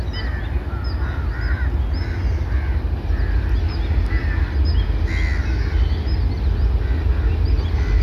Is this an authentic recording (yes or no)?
yes